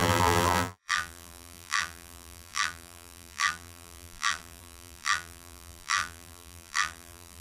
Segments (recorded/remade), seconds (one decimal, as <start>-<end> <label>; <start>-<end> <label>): 0.0-7.4 remade